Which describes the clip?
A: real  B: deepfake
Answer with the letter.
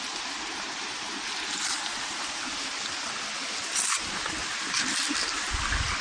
A